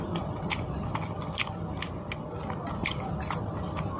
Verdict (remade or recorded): recorded